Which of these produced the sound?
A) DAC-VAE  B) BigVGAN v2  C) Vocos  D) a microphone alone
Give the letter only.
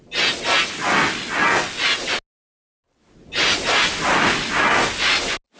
D